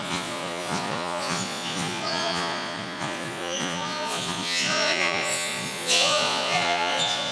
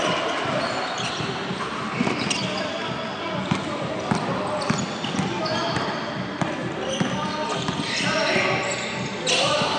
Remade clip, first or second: first